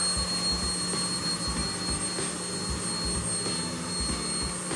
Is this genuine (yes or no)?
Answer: yes